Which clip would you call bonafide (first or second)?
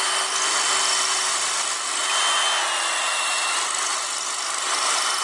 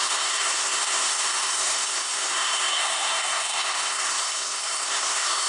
first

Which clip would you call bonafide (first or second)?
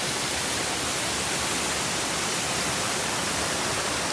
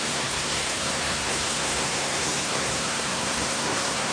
first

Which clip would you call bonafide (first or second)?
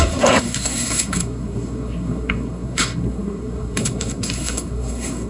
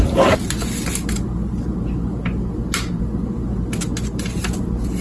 second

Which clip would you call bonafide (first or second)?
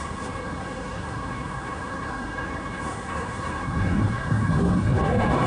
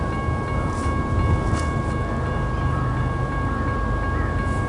second